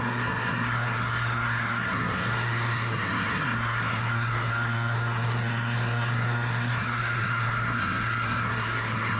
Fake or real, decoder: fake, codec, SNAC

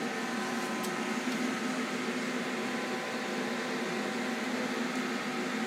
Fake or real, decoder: real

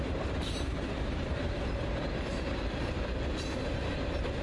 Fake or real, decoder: fake, vocoder, BigVGAN v2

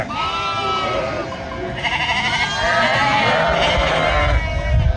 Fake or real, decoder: real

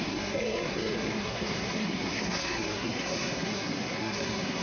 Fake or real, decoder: fake, codec, SNAC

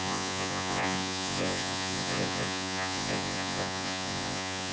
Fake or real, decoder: fake, vocoder, Vocos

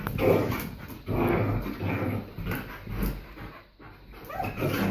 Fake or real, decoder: real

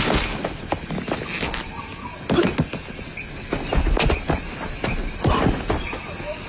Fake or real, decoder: real